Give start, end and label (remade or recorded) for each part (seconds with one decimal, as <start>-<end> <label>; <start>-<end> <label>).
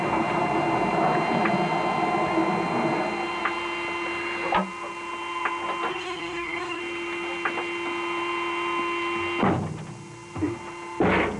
0.0-5.9 recorded; 5.9-6.8 remade; 6.8-11.4 recorded